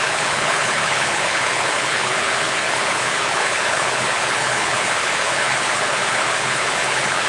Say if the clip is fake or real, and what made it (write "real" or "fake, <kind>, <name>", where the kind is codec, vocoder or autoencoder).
fake, codec, HILCodec